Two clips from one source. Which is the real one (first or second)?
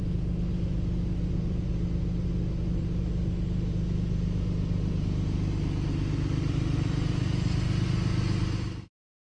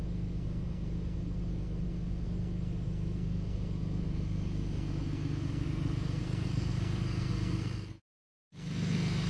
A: first